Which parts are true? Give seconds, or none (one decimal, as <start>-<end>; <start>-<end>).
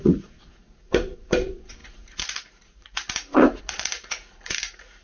none